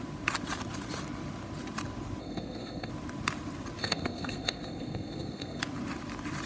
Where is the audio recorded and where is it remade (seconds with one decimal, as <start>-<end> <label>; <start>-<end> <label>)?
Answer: 0.0-2.2 recorded; 2.2-2.9 remade; 2.9-3.8 recorded; 3.8-5.6 remade; 5.6-6.5 recorded